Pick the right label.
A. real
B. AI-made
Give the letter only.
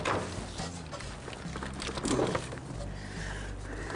A